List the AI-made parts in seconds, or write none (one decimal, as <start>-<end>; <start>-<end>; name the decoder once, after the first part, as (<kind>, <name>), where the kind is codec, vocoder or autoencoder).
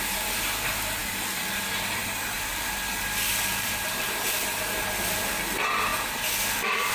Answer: none